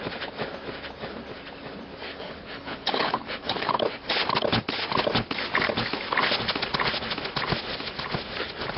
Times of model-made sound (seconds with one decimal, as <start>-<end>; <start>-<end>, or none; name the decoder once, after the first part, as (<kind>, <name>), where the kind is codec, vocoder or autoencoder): 2.1-3.7 (codec, HILCodec)